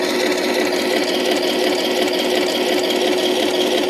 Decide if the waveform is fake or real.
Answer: real